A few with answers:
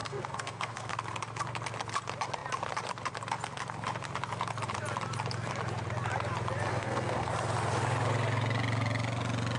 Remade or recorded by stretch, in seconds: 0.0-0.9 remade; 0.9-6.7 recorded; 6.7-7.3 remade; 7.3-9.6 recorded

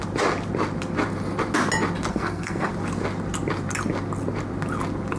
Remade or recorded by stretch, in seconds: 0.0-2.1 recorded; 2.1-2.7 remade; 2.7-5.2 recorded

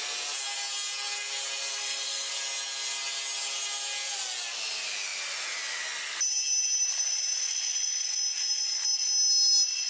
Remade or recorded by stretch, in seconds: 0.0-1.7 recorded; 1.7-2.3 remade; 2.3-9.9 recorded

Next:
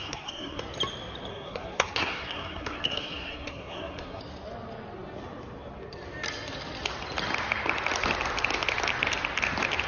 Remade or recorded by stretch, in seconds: 0.0-0.6 remade; 0.6-1.3 recorded; 1.3-4.2 remade; 4.2-9.9 recorded